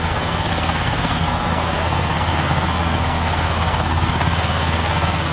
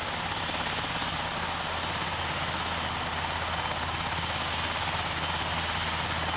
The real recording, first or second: second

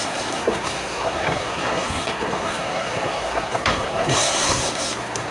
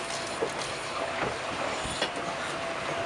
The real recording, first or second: second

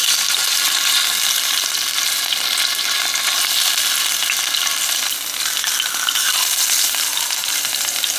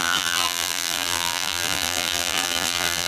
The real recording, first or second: first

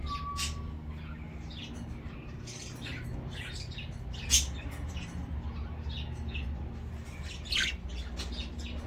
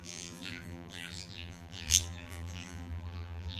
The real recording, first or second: first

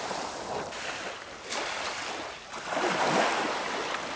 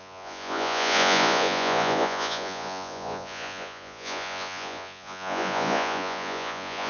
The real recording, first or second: first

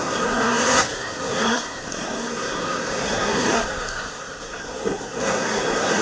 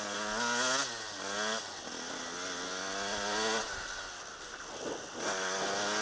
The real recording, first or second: second